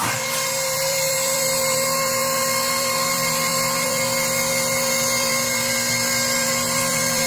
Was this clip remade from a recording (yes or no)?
yes